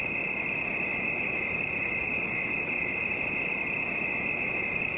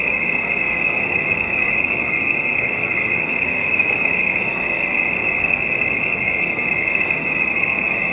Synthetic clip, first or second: second